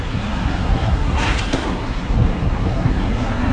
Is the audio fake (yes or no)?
yes